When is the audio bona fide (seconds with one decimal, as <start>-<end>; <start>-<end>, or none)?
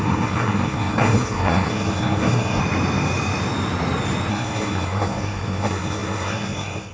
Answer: 2.6-4.3